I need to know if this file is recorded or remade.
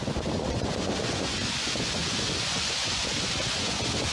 remade